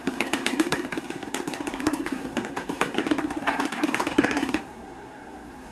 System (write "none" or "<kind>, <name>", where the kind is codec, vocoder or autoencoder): codec, SNAC